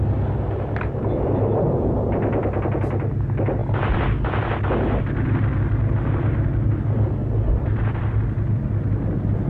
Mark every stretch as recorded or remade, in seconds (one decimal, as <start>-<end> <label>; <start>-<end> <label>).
0.0-9.5 recorded